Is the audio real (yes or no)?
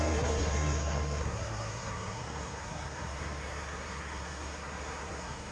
no